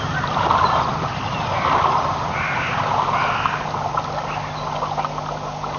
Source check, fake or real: real